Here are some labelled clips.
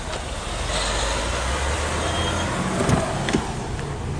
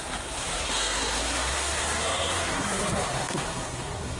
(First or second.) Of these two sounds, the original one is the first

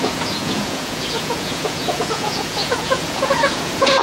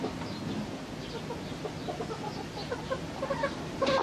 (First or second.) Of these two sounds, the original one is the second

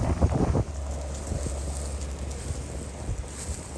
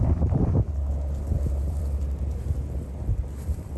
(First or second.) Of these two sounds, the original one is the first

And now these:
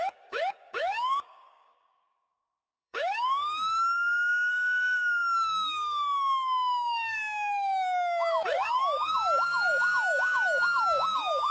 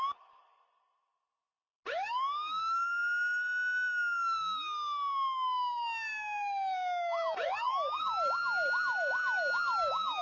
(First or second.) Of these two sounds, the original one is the second